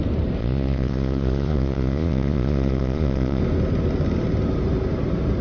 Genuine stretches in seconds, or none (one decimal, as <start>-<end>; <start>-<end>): 0.0-0.4; 3.4-5.4